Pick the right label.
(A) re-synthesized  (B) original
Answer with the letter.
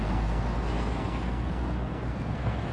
A